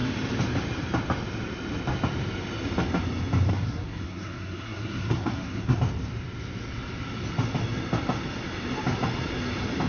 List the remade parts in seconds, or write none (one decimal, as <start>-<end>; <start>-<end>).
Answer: 3.5-5.8